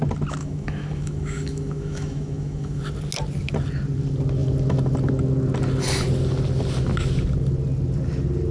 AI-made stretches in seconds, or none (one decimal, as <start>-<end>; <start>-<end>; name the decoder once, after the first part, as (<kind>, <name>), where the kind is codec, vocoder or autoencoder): 0.4-2.8 (autoencoder, DAC-VAE)